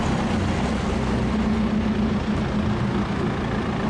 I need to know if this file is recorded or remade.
recorded